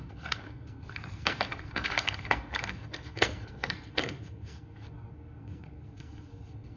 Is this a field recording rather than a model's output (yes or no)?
no